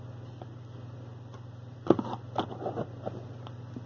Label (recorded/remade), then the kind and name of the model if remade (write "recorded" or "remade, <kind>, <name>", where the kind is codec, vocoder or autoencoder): recorded